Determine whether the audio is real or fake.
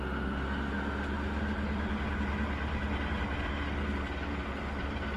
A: real